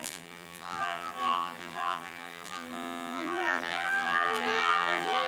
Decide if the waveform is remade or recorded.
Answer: remade